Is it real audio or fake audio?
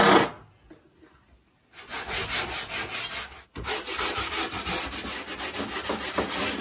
real